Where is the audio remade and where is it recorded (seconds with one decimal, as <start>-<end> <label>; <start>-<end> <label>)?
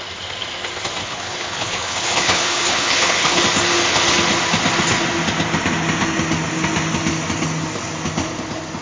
0.0-1.0 recorded; 1.0-3.4 remade; 3.4-8.8 recorded